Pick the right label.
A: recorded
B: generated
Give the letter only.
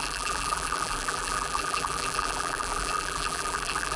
B